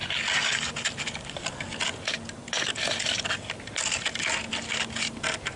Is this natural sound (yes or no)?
yes